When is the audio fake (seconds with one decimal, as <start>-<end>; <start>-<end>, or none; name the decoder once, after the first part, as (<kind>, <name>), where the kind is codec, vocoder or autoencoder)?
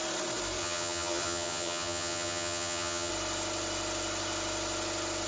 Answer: 0.6-3.1 (vocoder, HiFi-GAN)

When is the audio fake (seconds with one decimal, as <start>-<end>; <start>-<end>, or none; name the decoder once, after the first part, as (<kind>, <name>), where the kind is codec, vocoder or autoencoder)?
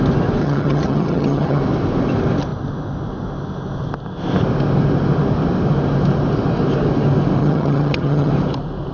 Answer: 0.4-1.6 (vocoder, HiFi-GAN); 7.4-8.3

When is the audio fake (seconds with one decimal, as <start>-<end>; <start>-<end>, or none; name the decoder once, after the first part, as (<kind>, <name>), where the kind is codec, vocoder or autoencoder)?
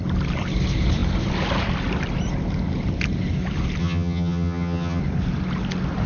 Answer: 3.8-5.0 (vocoder, HiFi-GAN)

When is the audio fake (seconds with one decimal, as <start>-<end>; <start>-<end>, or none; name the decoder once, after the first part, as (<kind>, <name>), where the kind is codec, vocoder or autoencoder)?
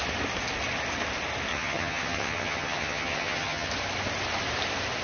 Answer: 1.5-3.7 (vocoder, HiFi-GAN)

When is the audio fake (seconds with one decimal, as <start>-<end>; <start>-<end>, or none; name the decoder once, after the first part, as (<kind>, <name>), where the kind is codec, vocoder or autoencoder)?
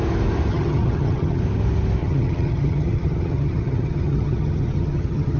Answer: 0.5-1.4 (vocoder, HiFi-GAN); 2.0-5.4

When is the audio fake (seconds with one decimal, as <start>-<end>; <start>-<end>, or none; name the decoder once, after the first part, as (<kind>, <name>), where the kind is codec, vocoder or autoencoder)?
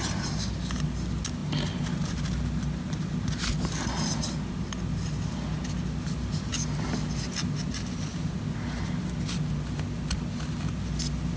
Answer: none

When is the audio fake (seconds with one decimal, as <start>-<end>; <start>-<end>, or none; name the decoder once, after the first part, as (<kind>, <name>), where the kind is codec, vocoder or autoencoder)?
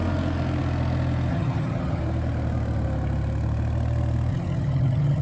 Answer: 1.3-2.0 (vocoder, HiFi-GAN); 4.3-5.2